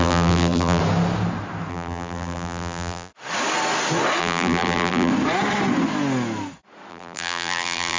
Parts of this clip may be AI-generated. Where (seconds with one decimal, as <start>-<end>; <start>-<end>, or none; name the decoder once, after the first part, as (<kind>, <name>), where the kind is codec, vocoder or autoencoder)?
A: 0.0-0.8 (vocoder, BigVGAN v2); 1.7-3.1; 4.2-5.1; 6.9-8.0